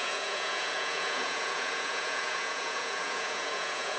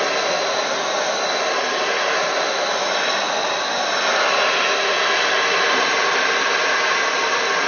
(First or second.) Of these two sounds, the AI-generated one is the first